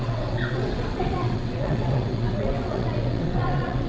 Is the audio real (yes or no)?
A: no